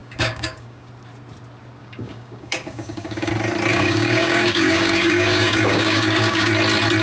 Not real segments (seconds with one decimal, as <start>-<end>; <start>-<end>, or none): 0.0-0.9; 1.8-3.3; 3.7-6.5